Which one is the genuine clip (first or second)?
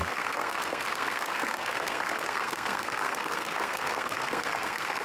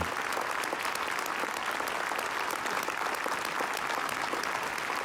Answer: second